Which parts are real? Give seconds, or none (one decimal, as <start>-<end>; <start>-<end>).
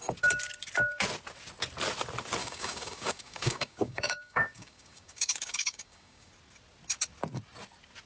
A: 0.0-2.4; 6.3-8.1